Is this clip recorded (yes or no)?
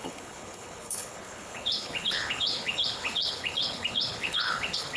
no